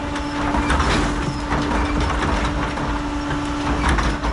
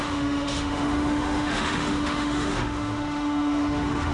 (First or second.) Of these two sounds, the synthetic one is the second